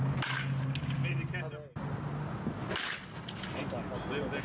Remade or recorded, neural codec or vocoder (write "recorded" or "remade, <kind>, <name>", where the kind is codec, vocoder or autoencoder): recorded